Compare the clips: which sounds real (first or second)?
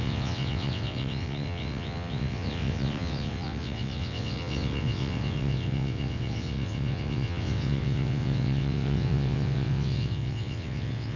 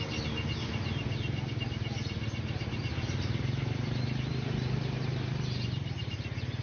second